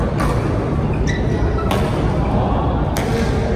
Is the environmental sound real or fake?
real